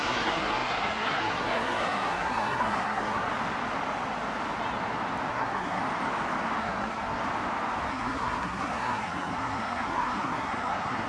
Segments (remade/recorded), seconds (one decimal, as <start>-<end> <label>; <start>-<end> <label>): 0.0-3.3 remade; 3.3-5.3 recorded; 5.3-5.8 remade; 5.8-6.6 recorded; 6.6-7.2 remade; 7.2-7.9 recorded; 7.9-11.1 remade